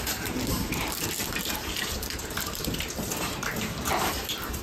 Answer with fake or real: fake